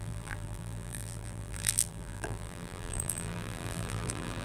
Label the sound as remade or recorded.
remade